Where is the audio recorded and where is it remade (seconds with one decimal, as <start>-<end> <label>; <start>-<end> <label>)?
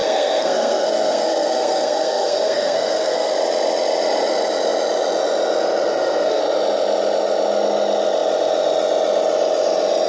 0.0-3.3 remade; 3.3-5.9 recorded; 5.9-6.4 remade; 6.4-10.1 recorded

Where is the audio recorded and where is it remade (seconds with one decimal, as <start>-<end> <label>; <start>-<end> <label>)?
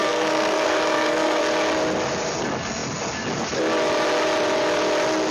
0.0-1.4 remade; 1.4-5.3 recorded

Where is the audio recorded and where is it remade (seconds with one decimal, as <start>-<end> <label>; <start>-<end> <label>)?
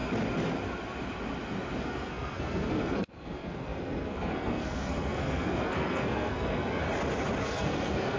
0.0-1.8 recorded; 1.8-6.8 remade; 6.8-7.4 recorded; 7.4-8.2 remade